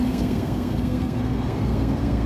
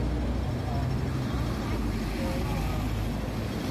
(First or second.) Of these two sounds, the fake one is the first